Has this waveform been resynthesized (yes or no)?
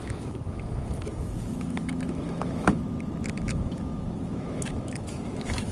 yes